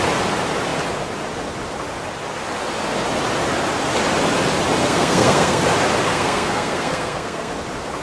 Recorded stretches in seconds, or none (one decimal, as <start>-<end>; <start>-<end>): 0.0-4.8; 5.6-6.1; 7.5-8.0